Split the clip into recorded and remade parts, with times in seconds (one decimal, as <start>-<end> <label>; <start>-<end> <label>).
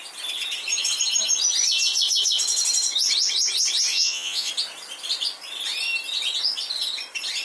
0.0-3.9 recorded; 3.9-4.5 remade; 4.5-7.4 recorded